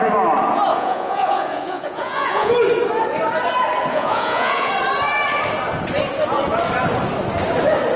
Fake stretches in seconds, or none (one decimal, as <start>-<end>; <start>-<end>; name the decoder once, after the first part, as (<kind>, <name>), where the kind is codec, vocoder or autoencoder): 0.7-2.5 (vocoder, Vocos); 3.9-4.7